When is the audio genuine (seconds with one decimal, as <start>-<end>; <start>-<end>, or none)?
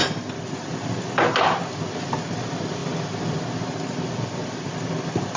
0.0-5.4